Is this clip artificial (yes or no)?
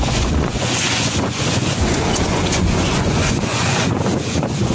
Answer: yes